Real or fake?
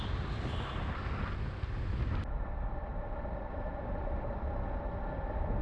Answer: real